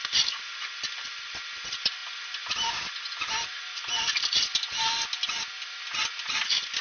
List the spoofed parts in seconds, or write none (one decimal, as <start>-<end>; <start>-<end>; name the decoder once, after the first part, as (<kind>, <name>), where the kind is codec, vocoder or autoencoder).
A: none